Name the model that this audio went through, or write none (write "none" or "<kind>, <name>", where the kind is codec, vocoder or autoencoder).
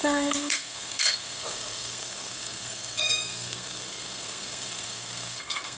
codec, SNAC